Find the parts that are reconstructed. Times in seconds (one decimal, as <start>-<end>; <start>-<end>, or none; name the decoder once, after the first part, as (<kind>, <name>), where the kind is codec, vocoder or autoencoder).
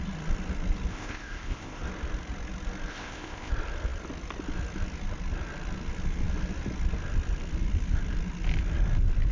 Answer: 0.9-1.8 (codec, ZipCodec); 2.9-3.5